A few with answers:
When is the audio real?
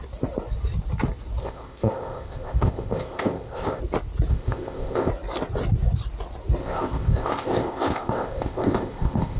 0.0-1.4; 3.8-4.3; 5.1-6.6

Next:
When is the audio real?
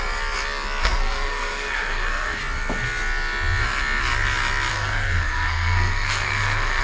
0.0-0.8; 2.4-4.7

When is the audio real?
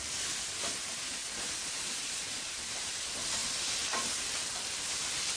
0.0-1.2; 2.5-5.4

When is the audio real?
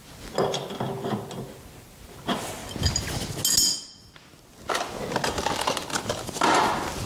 0.0-7.1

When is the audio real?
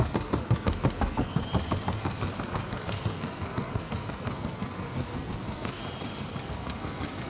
1.4-2.4; 5.8-6.4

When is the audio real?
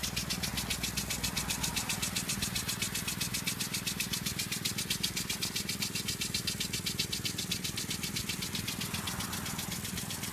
0.0-10.3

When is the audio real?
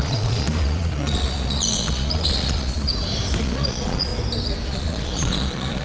2.9-3.4; 4.1-4.7